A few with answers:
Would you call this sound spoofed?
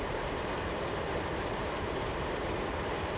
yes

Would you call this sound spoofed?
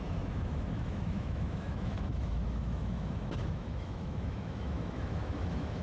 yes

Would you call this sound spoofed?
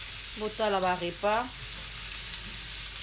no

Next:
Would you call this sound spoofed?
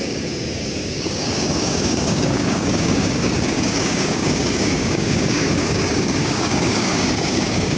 yes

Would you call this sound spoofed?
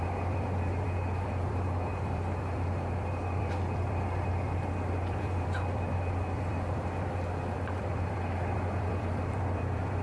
yes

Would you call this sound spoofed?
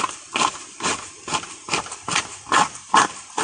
no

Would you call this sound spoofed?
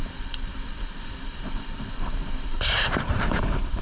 yes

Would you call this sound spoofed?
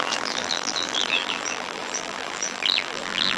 yes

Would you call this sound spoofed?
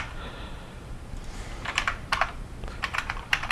yes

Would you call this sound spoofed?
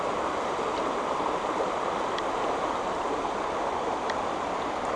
no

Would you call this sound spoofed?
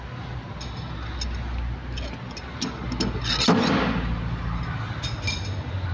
no